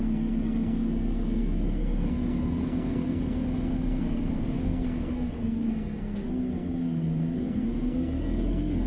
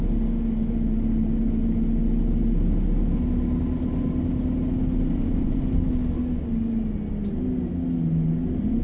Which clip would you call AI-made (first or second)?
first